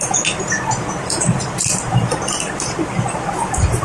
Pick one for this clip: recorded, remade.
recorded